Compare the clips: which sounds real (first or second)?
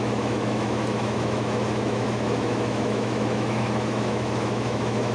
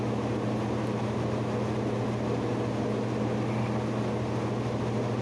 second